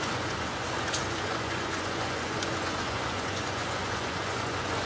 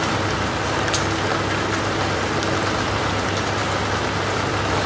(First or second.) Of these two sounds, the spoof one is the first